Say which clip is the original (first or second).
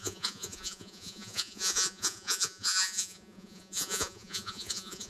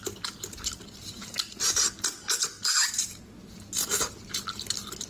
second